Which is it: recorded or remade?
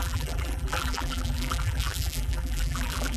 remade